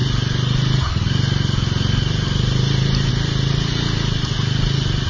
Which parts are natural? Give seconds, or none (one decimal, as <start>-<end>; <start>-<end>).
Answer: 0.0-5.1